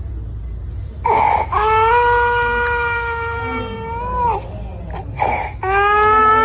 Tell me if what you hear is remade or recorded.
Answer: recorded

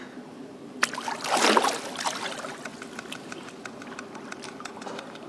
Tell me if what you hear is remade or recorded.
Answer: recorded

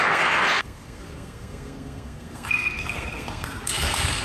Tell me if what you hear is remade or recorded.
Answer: remade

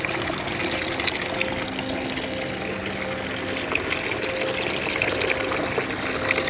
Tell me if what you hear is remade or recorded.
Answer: recorded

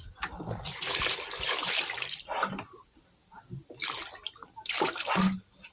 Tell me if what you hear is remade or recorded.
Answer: recorded